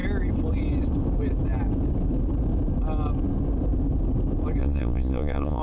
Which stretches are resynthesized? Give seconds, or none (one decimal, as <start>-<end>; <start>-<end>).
4.6-5.6